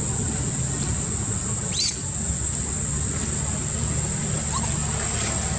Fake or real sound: real